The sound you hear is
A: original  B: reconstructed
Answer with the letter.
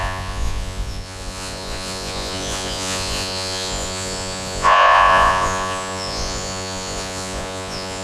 B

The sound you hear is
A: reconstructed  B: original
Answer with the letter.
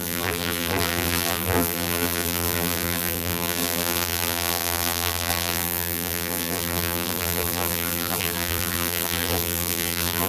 A